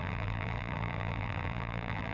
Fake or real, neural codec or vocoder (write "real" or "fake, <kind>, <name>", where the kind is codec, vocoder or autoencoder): fake, vocoder, BigVGAN v2